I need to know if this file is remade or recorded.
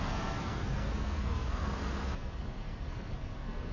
remade